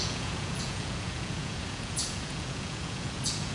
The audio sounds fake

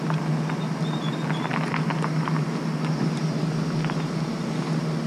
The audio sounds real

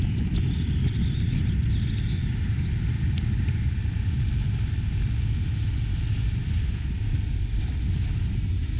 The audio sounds real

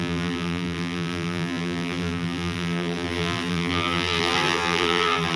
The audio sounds fake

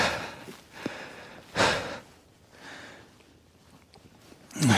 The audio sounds real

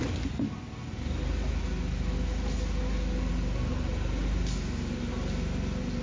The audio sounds real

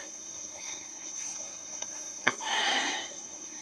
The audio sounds fake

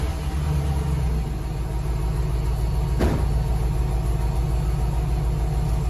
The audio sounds real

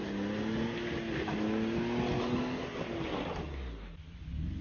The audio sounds real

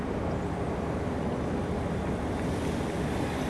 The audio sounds real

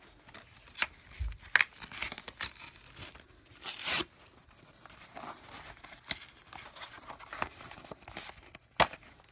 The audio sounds real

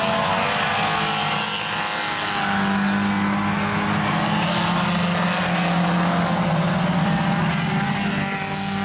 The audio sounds real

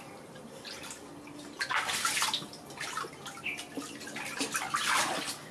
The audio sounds real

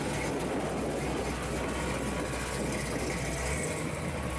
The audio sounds real